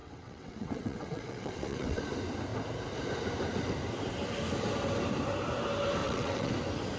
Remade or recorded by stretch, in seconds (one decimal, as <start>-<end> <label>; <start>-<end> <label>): 0.0-2.0 remade; 2.0-6.0 recorded; 6.0-6.5 remade; 6.5-7.0 recorded

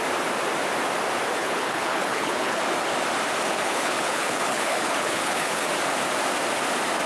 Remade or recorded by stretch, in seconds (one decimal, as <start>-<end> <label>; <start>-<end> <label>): 0.0-1.4 recorded; 1.4-2.6 remade; 2.6-3.5 recorded; 3.5-5.7 remade; 5.7-7.1 recorded